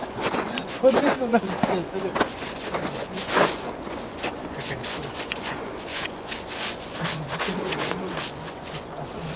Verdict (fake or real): fake